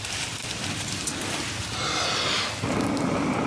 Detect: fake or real real